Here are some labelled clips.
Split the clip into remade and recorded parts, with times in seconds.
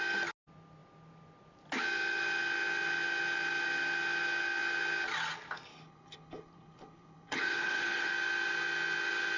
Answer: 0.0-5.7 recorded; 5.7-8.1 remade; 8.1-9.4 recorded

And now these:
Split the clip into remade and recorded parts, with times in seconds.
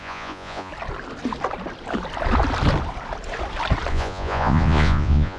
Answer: 0.0-0.7 remade; 0.7-3.9 recorded; 3.9-5.4 remade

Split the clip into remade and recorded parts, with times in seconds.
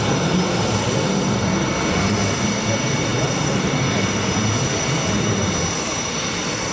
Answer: 0.0-6.7 recorded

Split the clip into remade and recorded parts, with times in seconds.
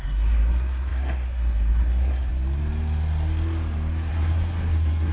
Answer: 0.0-2.3 remade; 2.3-4.1 recorded; 4.1-5.1 remade